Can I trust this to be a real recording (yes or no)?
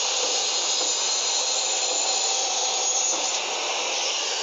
yes